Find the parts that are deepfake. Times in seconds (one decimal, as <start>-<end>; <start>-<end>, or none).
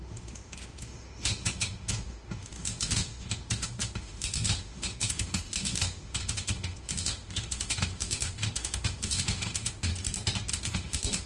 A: 0.0-9.9; 10.5-11.3